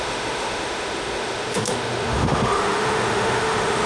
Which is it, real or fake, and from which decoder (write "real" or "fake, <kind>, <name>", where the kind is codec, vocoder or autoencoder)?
fake, autoencoder, DAC-VAE